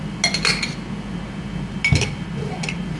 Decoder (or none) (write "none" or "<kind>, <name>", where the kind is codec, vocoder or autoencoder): none